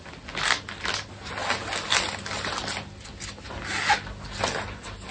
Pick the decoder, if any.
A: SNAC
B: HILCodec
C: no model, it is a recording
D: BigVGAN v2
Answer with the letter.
C